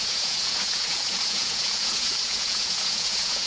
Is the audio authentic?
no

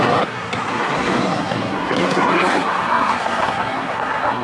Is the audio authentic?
no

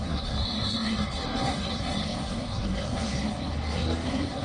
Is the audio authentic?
no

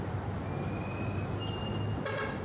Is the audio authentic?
yes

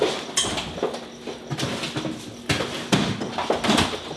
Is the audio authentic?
yes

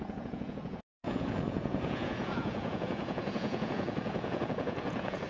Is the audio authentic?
no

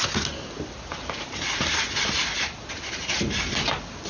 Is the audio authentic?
yes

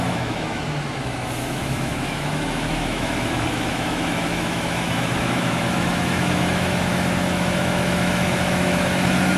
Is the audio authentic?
no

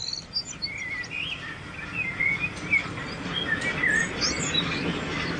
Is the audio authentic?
yes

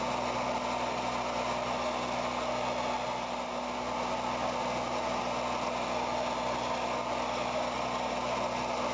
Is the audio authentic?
yes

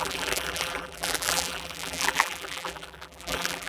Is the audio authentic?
no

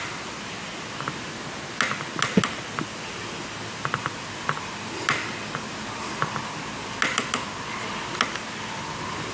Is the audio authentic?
yes